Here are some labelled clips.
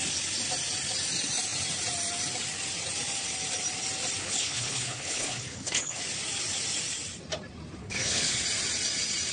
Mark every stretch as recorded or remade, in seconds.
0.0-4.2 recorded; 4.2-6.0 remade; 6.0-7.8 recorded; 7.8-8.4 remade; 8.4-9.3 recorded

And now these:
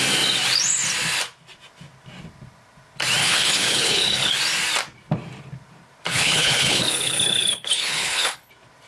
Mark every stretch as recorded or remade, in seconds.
0.0-3.2 recorded; 3.2-4.3 remade; 4.3-6.1 recorded; 6.1-8.5 remade; 8.5-8.9 recorded

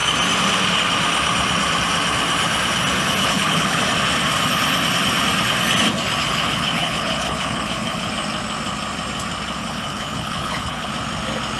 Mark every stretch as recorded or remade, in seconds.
0.0-3.2 recorded; 3.2-3.8 remade; 3.8-6.2 recorded; 6.2-8.1 remade; 8.1-9.6 recorded; 9.6-10.9 remade; 10.9-11.6 recorded

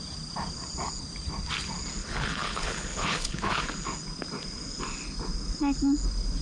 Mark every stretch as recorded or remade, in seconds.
0.0-2.0 recorded; 2.0-3.6 remade; 3.6-6.4 recorded

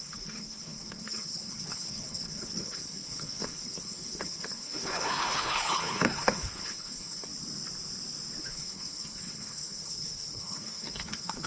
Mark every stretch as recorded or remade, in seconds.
0.0-7.3 remade; 7.3-8.4 recorded; 8.4-11.5 remade

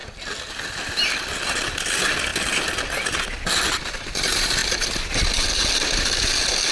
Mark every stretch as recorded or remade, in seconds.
0.0-6.7 recorded

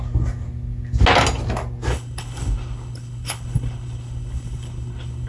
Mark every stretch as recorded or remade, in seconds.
0.0-1.9 recorded; 1.9-5.3 remade